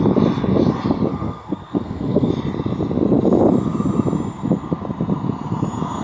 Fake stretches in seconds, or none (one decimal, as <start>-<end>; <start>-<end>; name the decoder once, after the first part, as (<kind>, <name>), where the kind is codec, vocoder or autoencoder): 1.1-2.3 (codec, SNAC)